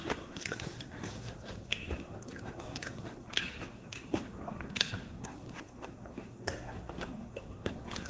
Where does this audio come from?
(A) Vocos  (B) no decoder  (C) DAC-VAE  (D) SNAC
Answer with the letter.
D